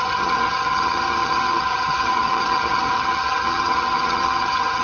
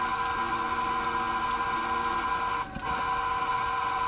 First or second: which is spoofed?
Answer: first